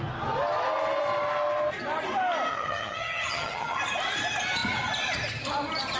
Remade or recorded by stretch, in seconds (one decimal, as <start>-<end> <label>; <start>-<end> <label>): 0.0-2.5 recorded; 2.5-3.8 remade; 3.8-6.0 recorded